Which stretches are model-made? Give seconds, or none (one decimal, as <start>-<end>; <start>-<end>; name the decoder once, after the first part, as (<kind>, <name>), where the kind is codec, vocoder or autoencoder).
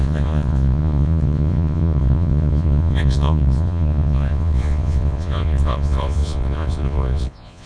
0.0-7.7 (vocoder, Vocos)